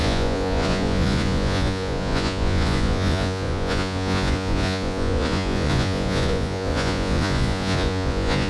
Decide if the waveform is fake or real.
fake